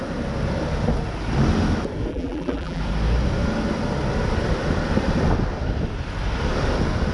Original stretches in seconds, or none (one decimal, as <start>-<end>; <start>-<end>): 0.0-2.1; 2.8-7.1